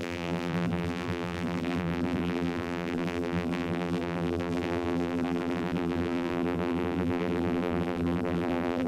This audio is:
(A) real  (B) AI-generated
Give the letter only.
B